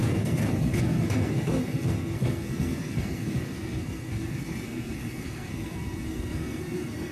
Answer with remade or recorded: remade